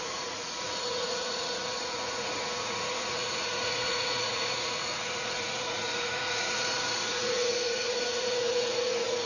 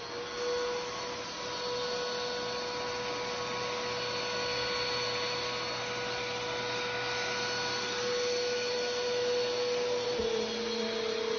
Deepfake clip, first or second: first